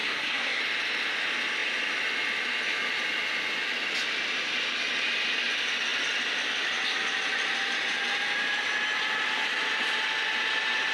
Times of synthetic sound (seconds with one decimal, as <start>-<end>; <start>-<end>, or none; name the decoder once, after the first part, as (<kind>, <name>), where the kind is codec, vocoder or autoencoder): 0.0-0.6 (codec, SNAC)